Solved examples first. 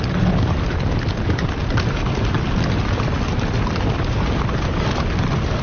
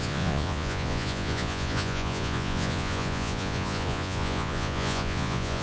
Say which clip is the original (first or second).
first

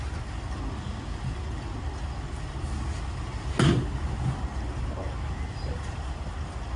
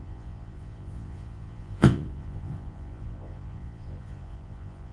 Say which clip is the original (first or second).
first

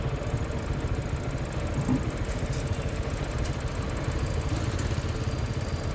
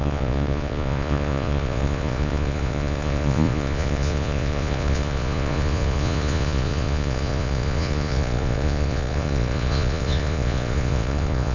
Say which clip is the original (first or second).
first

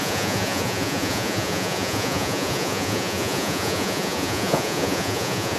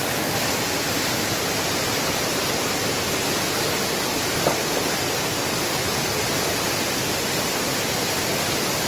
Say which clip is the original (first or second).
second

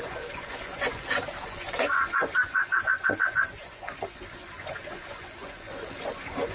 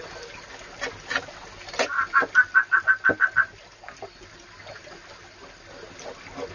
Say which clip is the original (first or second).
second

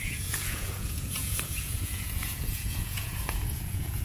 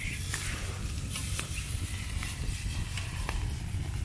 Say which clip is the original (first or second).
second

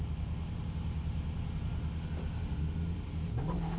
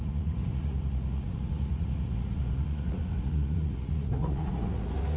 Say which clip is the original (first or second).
first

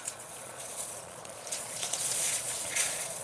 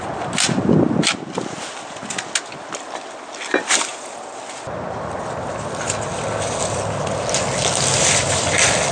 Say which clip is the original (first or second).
second